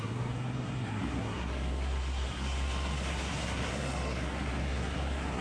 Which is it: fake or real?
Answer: fake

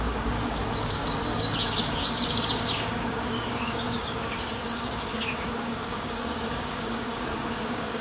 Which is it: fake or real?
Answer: fake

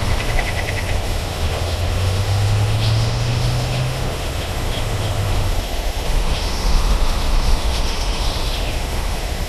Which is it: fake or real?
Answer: fake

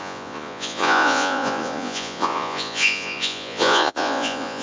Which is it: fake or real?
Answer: fake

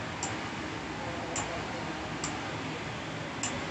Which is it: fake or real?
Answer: real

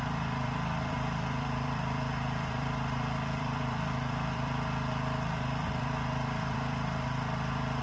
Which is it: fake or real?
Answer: fake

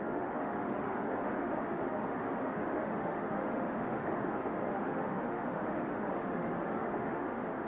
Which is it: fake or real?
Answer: fake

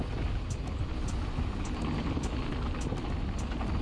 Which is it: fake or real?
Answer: real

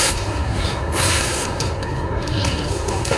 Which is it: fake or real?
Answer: fake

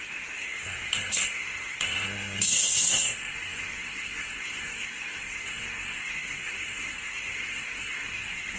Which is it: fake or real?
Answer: fake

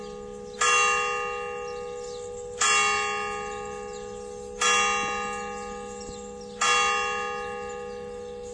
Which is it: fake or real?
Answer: real